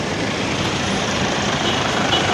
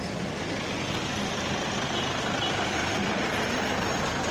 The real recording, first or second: second